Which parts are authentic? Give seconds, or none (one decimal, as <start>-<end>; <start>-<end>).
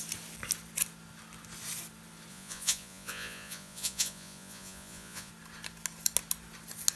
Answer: 0.0-2.3; 5.3-7.0